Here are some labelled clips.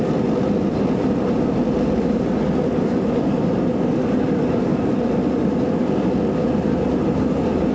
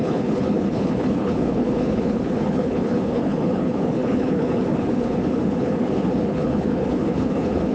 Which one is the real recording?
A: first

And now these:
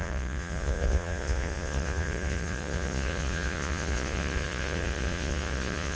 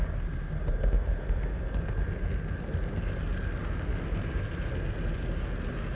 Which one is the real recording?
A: second